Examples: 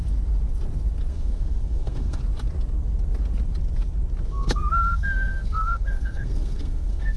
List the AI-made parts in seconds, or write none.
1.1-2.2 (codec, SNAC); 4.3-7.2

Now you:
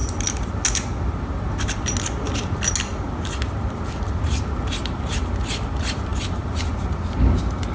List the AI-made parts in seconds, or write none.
none

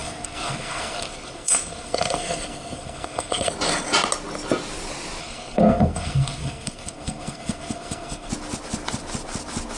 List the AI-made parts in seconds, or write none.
0.0-3.5 (codec, SNAC); 5.2-8.3

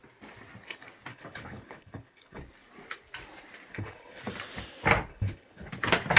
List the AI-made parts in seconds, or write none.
1.1-2.4 (codec, HILCodec); 3.7-4.2; 5.1-5.7

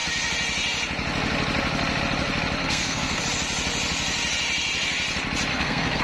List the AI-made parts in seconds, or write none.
2.6-3.2 (codec, SNAC); 5.5-6.0

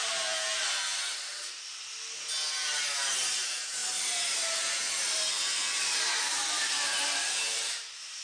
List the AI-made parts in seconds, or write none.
0.0-0.9 (vocoder, BigVGAN v2); 3.3-8.2

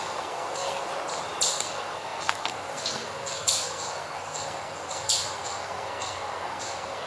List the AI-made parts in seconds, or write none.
0.0-0.9 (codec, SNAC); 1.5-7.1